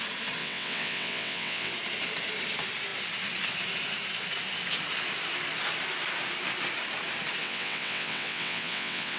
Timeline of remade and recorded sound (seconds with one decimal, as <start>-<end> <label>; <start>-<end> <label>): 0.0-0.4 recorded; 0.4-1.7 remade; 1.7-7.4 recorded; 7.4-9.2 remade